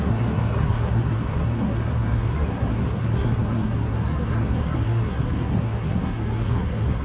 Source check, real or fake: fake